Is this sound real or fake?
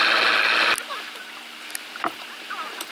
real